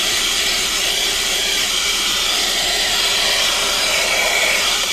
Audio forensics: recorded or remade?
remade